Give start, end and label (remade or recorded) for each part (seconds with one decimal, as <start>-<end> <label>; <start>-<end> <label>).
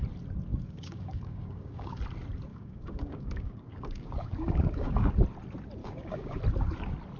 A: 0.0-0.5 recorded; 0.5-2.0 remade; 2.0-2.5 recorded; 2.5-5.1 remade; 5.1-5.8 recorded; 5.8-6.4 remade; 6.4-7.2 recorded